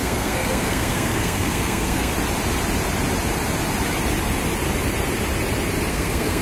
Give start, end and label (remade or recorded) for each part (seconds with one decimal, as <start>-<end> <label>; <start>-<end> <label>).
0.0-2.1 remade; 2.1-5.9 recorded; 5.9-6.4 remade

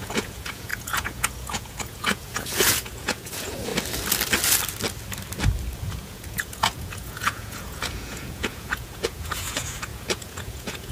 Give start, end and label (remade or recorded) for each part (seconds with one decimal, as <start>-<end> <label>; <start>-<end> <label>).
0.0-3.7 remade; 3.7-5.8 recorded; 5.8-10.9 remade

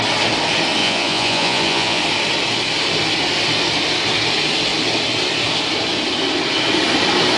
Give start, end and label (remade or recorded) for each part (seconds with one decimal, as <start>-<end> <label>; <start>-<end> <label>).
0.0-0.8 recorded; 0.8-2.0 remade; 2.0-7.4 recorded

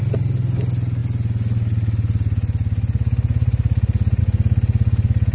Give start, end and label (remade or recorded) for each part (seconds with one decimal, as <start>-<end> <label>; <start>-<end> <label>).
0.0-5.3 recorded

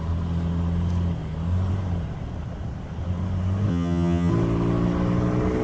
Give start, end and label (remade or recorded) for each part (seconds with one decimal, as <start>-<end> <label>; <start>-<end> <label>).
0.0-3.7 recorded; 3.7-4.3 remade; 4.3-5.6 recorded

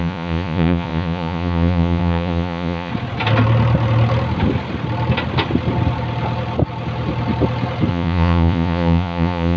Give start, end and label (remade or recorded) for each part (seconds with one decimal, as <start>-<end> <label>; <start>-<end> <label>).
0.0-2.9 remade; 2.9-7.9 recorded; 7.9-9.6 remade